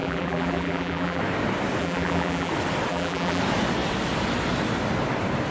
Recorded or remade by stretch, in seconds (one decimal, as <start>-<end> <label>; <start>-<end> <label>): 0.0-1.2 remade; 1.2-1.8 recorded; 1.8-2.5 remade; 2.5-2.9 recorded; 2.9-3.4 remade; 3.4-5.5 recorded